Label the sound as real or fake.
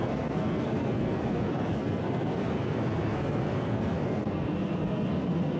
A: fake